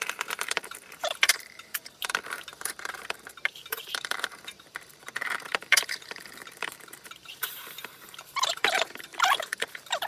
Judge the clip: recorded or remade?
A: remade